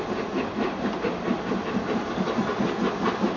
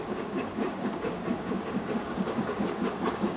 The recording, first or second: first